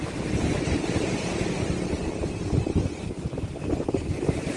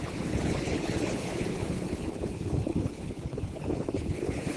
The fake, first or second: second